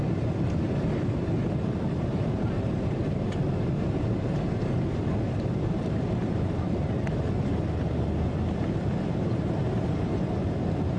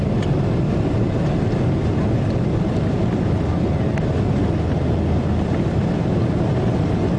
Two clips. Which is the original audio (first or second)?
second